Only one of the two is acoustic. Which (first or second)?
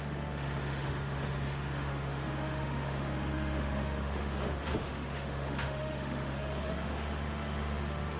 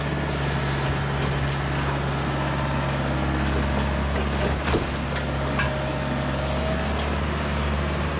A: second